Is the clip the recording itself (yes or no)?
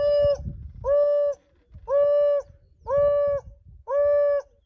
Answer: yes